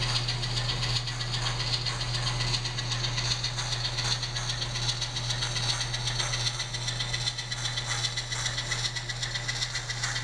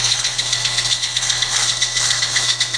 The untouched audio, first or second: first